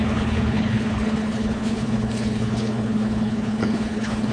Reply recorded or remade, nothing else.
remade